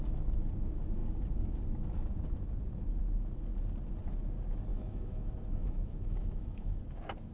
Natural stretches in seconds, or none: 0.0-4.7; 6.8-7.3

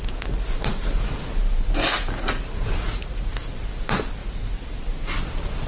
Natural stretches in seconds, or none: 0.0-5.7

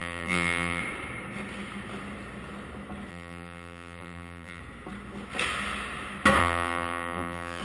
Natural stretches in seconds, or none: 0.8-3.1; 4.6-6.4